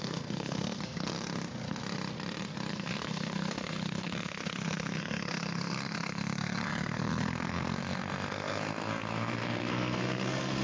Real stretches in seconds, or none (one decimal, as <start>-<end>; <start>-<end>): 1.1-2.7